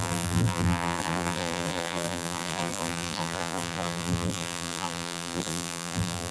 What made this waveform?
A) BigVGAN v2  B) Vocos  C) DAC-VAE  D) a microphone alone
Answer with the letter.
A